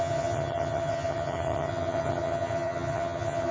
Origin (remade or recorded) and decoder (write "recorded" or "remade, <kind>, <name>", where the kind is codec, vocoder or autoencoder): remade, vocoder, HiFi-GAN